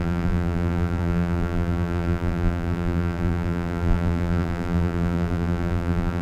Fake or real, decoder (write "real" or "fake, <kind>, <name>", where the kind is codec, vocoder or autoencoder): fake, vocoder, BigVGAN v2